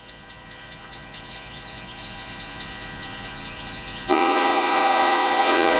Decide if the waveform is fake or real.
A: fake